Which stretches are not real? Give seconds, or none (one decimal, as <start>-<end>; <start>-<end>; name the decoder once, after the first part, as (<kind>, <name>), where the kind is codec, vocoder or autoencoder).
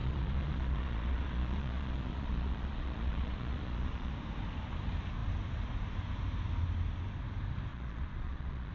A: 0.0-4.1 (vocoder, Vocos); 7.7-8.7